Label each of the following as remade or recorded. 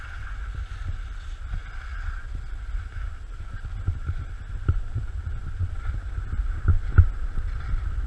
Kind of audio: remade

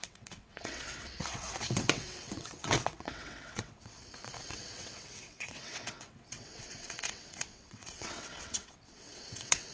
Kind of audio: remade